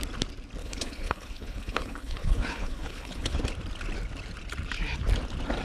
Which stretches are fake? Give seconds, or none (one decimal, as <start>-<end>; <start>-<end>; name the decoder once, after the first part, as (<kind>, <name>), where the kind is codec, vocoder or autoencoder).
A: 0.6-3.4 (codec, HILCodec)

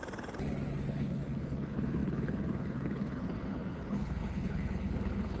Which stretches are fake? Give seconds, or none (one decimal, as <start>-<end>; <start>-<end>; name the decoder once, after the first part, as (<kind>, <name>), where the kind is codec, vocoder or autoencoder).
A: 0.7-5.4 (codec, HILCodec)

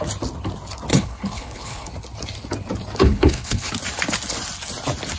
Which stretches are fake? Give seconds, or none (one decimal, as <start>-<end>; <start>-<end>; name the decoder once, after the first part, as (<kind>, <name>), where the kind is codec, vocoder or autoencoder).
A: 0.9-1.9 (codec, HILCodec); 3.0-3.7

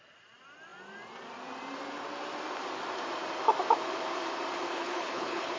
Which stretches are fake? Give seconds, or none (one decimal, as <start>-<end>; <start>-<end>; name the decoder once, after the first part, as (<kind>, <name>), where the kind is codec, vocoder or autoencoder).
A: 4.7-5.6 (codec, HILCodec)

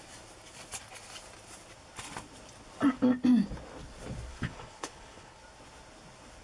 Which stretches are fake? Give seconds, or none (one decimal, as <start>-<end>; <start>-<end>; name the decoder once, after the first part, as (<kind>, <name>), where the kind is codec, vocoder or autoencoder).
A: 4.3-5.4 (codec, HILCodec)

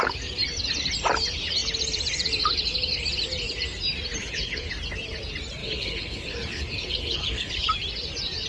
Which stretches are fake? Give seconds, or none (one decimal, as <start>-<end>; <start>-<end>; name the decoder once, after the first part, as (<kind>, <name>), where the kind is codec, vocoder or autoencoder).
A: 4.2-4.7 (codec, HILCodec); 5.6-7.7

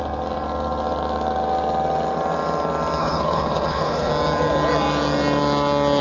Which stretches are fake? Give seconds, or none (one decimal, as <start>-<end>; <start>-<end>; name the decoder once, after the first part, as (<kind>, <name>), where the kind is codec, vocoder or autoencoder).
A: 3.0-4.1 (codec, HILCodec)